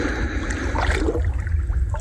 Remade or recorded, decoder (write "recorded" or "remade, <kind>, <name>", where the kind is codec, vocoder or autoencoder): recorded